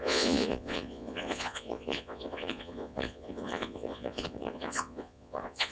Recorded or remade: remade